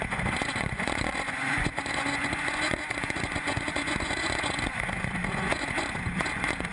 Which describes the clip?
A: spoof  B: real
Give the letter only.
A